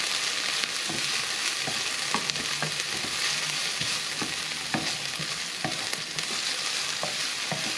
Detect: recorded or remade recorded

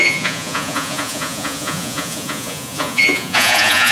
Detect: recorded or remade remade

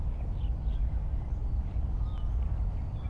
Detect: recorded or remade recorded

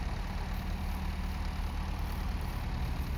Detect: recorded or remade recorded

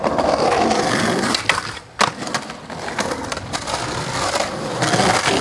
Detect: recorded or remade recorded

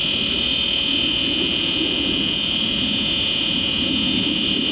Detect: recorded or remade recorded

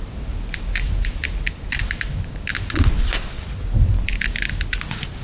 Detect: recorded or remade recorded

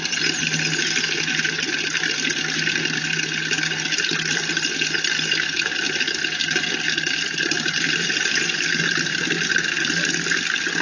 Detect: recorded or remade recorded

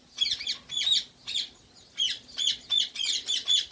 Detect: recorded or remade recorded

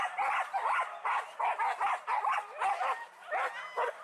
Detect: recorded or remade recorded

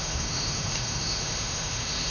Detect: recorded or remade remade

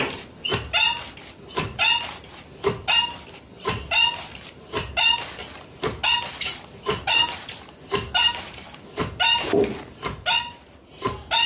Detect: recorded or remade recorded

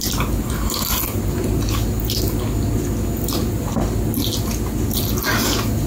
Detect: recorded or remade recorded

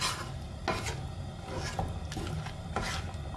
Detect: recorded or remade recorded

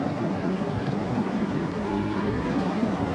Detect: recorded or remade remade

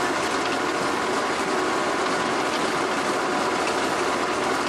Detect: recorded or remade recorded